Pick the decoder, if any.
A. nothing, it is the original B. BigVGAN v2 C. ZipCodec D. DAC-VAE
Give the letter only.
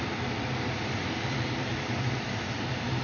B